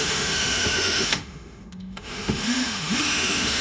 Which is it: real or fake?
fake